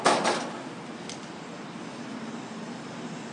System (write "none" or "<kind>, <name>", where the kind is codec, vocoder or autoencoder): none